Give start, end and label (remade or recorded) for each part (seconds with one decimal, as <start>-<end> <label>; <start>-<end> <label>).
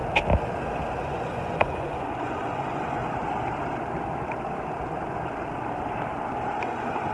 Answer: 0.0-1.0 recorded; 1.0-3.0 remade; 3.0-6.6 recorded; 6.6-7.1 remade